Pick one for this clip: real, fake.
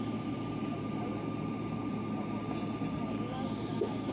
real